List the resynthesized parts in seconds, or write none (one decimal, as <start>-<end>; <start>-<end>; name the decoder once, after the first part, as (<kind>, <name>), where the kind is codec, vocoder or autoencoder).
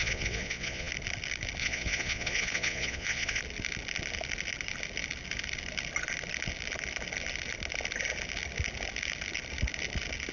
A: 0.0-0.9 (vocoder, Vocos); 1.6-3.4